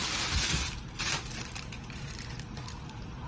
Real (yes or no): yes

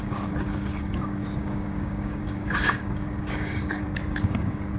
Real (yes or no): no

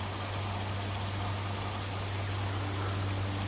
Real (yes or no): yes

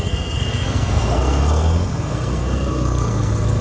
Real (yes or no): no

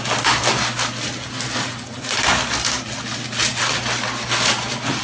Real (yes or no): yes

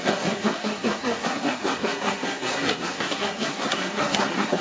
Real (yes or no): no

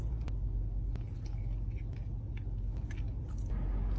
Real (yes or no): yes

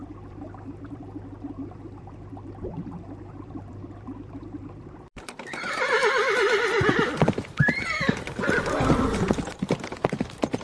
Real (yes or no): no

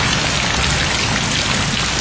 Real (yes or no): yes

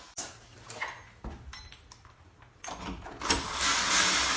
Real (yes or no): yes